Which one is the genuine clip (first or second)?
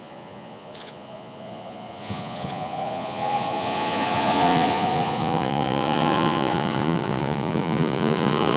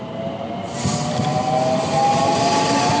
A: second